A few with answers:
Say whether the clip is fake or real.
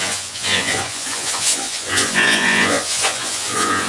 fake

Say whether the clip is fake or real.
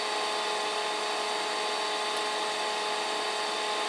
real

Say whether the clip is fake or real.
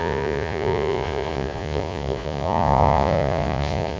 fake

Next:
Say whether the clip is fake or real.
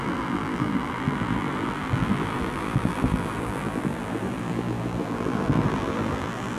fake